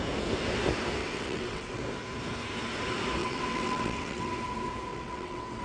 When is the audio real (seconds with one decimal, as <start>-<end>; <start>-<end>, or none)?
0.0-1.0; 1.8-3.2; 4.3-4.9